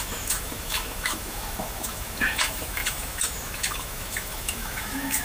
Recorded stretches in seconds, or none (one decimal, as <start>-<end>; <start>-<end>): none